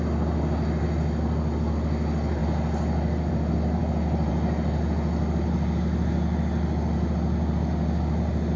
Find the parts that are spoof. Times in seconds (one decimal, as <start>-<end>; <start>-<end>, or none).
none